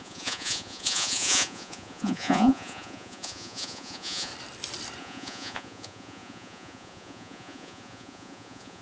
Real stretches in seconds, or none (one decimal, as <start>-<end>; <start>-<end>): 4.3-5.0